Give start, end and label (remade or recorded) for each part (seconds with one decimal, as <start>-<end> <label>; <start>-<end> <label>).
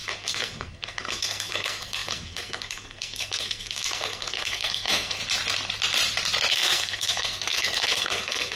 0.0-5.2 remade; 5.2-6.5 recorded; 6.5-8.6 remade